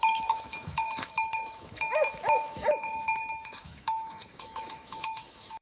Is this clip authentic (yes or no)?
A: no